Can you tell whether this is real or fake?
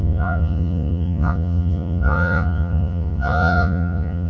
fake